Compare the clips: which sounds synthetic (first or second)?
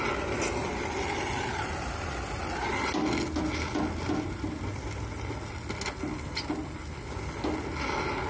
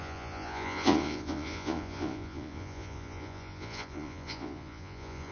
second